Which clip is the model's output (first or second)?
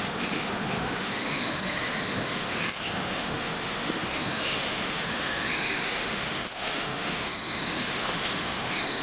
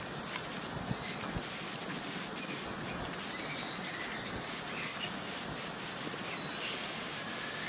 first